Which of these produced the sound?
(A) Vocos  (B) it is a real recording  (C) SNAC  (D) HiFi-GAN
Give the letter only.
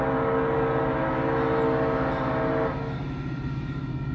B